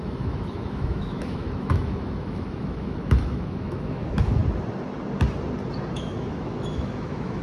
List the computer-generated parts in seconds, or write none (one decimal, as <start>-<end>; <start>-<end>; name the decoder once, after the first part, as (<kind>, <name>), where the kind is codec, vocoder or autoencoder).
0.0-4.4 (autoencoder, DAC-VAE); 5.9-7.4